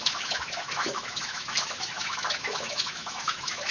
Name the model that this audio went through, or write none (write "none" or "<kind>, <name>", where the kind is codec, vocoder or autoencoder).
autoencoder, DAC-VAE